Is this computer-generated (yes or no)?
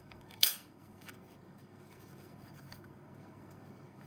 yes